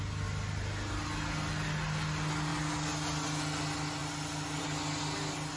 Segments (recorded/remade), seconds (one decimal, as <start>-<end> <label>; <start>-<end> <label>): 0.0-5.6 recorded